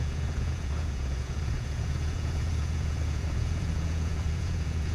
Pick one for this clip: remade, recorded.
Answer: remade